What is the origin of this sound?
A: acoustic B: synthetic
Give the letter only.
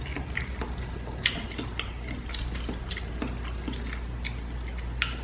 A